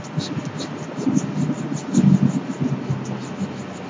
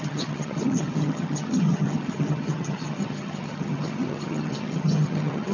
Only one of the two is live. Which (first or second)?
first